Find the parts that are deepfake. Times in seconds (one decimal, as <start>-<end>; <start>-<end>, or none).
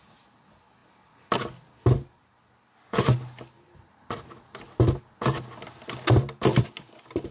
none